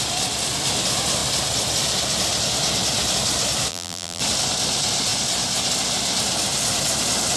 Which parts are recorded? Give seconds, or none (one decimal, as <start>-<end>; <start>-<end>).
0.0-3.7; 4.2-7.4